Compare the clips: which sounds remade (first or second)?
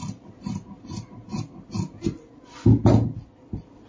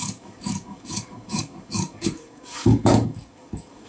second